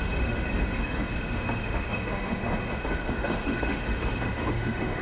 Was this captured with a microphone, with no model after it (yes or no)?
no